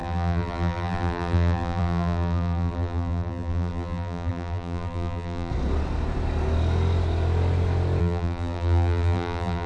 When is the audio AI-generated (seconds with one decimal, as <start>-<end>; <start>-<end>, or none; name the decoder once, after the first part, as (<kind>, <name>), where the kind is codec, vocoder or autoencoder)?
0.0-5.5 (vocoder, BigVGAN v2); 8.0-9.7